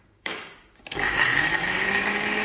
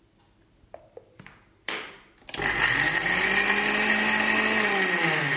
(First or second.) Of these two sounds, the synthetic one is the first